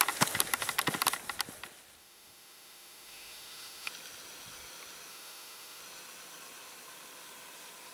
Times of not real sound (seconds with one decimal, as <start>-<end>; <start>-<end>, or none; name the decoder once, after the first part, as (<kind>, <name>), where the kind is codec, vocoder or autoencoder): 2.0-3.9 (autoencoder, DAC-VAE); 5.1-5.8